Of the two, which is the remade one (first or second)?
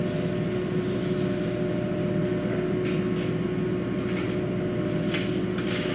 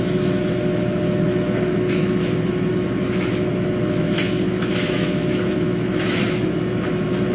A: second